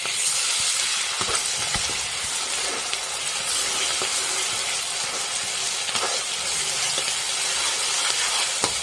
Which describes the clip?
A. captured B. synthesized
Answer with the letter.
A